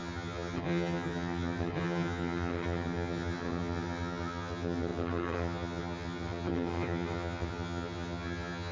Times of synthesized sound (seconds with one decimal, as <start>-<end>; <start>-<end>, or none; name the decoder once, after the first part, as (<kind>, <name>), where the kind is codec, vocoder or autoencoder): 0.0-8.7 (vocoder, HiFi-GAN)